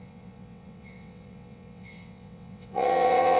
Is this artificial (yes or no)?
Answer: yes